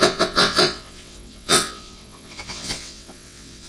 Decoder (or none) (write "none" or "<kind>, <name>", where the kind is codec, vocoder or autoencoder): vocoder, WaveNeXt